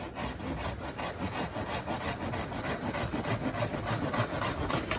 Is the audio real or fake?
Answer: real